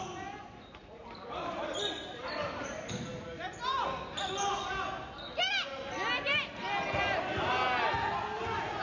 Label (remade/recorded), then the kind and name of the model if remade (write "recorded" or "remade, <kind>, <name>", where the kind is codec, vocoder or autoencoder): recorded